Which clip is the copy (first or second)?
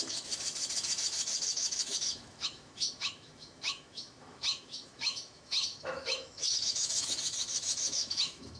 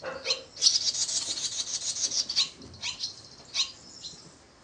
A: first